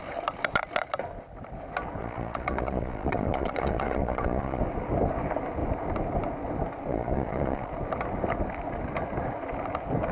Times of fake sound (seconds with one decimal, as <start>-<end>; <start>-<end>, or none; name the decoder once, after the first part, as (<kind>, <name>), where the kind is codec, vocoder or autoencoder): 2.0-4.6 (vocoder, Vocos); 6.9-7.7